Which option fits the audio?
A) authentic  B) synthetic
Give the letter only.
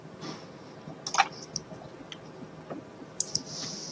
A